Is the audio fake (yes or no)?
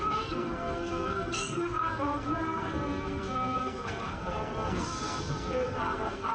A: yes